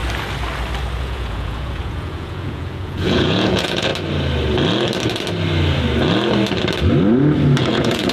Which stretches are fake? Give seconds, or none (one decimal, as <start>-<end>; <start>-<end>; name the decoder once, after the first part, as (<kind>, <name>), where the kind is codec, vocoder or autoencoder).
1.0-3.9 (vocoder, Vocos); 7.6-8.1